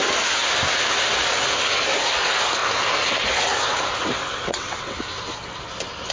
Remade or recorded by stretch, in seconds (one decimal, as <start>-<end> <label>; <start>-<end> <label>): 0.0-4.3 recorded; 4.3-5.0 remade; 5.0-6.1 recorded